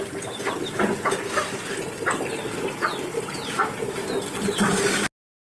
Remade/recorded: recorded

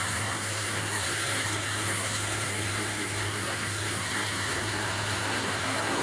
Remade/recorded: remade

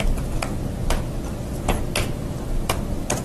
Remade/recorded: recorded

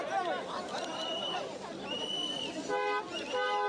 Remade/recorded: recorded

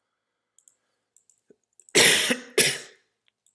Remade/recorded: recorded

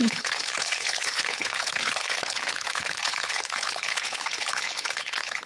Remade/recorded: remade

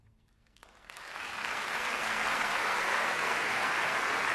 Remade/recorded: remade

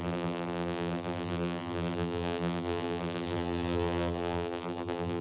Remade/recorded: remade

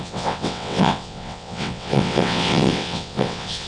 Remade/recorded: remade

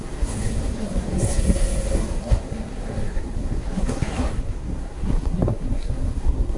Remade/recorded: remade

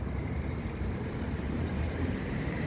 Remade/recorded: remade